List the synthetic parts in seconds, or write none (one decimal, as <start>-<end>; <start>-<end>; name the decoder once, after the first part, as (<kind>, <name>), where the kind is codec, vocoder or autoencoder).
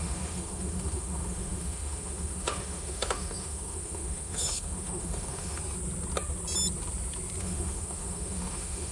0.0-5.6 (autoencoder, DAC-VAE); 7.4-8.9